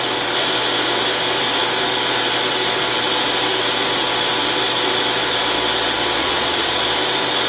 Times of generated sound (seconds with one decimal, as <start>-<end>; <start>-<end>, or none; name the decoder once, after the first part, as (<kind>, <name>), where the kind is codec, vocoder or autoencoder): 6.2-6.8 (vocoder, Vocos)